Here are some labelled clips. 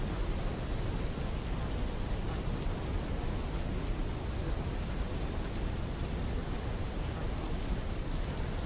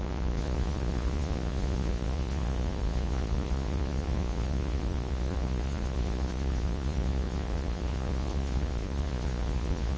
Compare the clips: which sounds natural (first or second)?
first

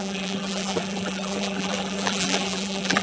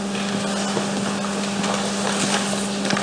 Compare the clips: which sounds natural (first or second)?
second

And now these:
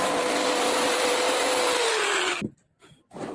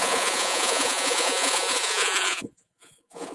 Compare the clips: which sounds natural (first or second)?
first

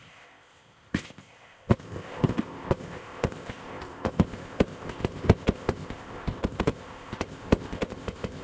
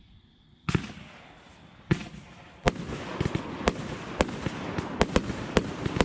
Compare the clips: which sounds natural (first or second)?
second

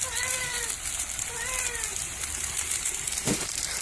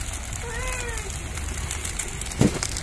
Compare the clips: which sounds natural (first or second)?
second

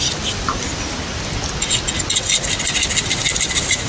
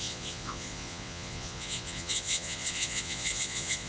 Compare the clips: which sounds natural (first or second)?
first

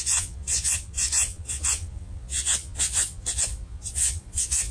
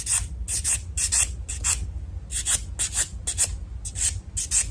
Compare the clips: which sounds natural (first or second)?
second